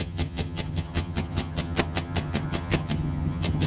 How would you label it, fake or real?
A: fake